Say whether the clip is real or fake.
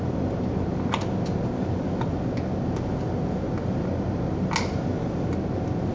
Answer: real